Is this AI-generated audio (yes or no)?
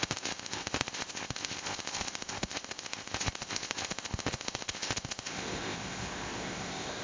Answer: yes